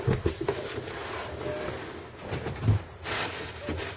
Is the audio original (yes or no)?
yes